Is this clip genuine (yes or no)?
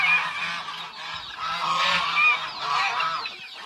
yes